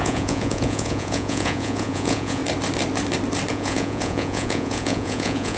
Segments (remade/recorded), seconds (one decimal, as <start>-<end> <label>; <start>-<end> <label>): 0.0-2.4 remade; 2.4-3.5 recorded; 3.5-5.6 remade